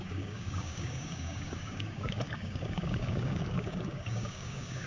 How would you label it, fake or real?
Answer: fake